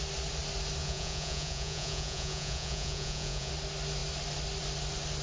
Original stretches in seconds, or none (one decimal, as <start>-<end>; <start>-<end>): 0.0-0.8; 3.5-5.2

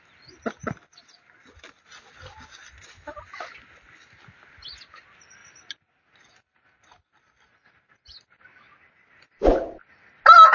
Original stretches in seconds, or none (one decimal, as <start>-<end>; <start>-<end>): 0.0-10.5